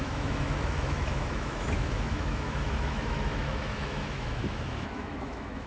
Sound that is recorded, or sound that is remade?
remade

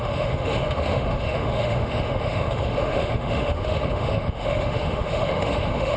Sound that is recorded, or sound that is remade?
remade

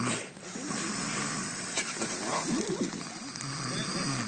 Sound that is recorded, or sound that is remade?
recorded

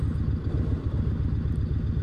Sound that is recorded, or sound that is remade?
recorded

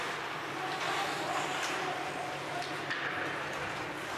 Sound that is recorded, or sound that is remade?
recorded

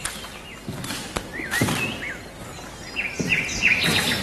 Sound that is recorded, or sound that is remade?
recorded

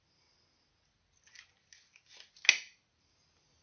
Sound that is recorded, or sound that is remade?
recorded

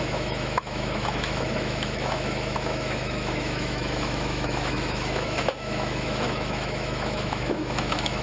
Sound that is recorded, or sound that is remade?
remade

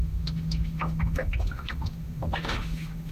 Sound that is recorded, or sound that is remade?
remade